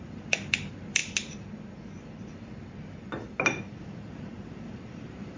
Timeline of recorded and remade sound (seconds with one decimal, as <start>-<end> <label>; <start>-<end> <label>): 0.0-1.0 remade; 1.0-3.8 recorded; 3.8-5.4 remade